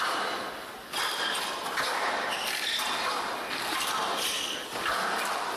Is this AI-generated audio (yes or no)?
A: no